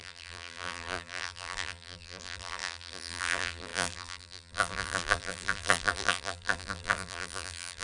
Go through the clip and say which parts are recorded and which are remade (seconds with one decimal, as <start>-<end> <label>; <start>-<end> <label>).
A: 0.0-7.8 remade